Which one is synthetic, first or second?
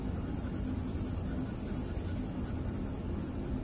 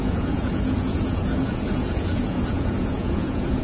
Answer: second